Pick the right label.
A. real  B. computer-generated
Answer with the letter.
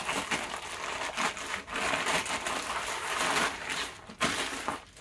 A